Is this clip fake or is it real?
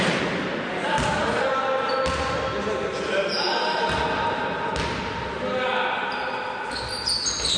real